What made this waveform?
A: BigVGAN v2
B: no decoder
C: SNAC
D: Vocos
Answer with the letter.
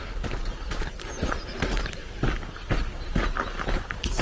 B